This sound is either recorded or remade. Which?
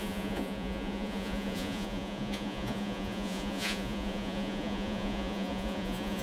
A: remade